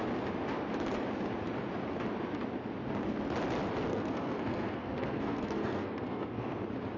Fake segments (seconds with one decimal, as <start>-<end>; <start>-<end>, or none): 3.9-6.6